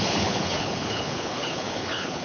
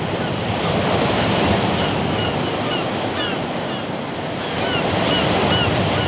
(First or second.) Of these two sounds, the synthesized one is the first